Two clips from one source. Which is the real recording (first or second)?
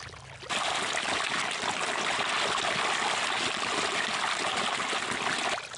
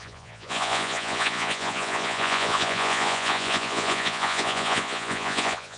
first